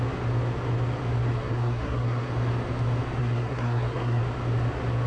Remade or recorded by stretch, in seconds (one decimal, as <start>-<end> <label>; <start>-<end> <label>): 0.0-1.3 recorded; 1.3-2.3 remade; 2.3-3.2 recorded; 3.2-4.2 remade; 4.2-5.1 recorded